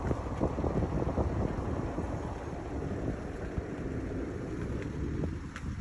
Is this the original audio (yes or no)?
yes